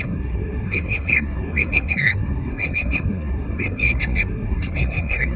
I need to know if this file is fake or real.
fake